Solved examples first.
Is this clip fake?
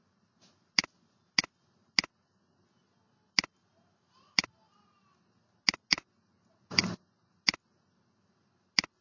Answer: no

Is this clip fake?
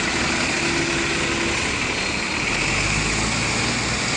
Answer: no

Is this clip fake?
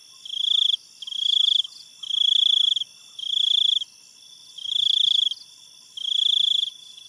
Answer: no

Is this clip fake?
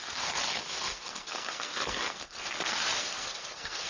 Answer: yes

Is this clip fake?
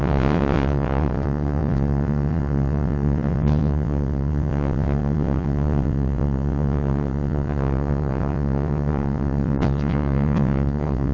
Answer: yes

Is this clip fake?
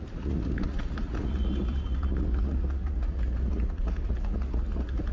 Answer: yes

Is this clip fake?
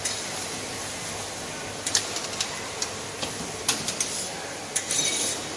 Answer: yes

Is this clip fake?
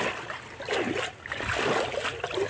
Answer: no